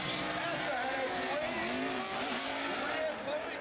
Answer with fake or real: real